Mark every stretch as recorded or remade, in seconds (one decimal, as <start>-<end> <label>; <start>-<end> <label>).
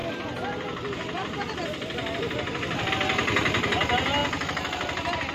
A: 0.0-2.9 remade; 2.9-5.3 recorded